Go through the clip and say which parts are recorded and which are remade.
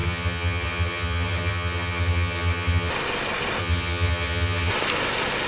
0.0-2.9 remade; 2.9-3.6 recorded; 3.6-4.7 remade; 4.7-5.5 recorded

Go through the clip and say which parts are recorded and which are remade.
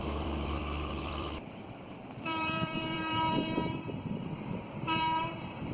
0.0-5.7 remade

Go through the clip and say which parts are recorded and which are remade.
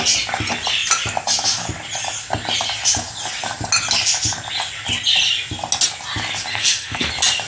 0.0-6.5 recorded; 6.5-7.1 remade; 7.1-7.5 recorded